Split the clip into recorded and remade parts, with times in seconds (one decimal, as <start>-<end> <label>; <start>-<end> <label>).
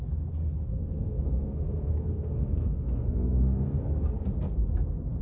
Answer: 0.0-0.7 recorded; 0.7-3.8 remade; 3.8-5.2 recorded